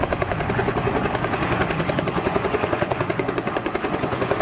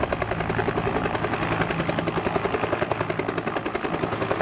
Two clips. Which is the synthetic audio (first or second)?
first